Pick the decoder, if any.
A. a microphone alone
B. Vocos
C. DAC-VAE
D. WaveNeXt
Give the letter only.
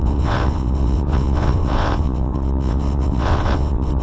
D